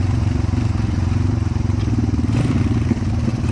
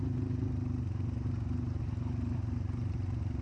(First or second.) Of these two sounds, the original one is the second